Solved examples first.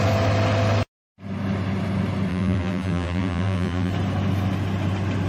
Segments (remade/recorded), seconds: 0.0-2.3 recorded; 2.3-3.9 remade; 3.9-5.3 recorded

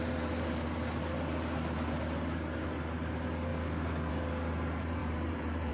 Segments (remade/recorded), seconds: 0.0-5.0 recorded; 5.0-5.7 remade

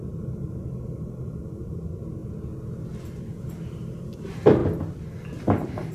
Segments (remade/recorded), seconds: 0.0-2.2 remade; 2.2-3.2 recorded; 3.2-4.6 remade; 4.6-5.4 recorded; 5.4-5.9 remade